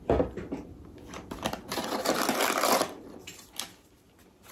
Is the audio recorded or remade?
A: recorded